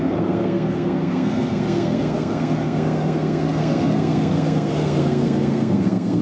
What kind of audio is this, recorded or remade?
remade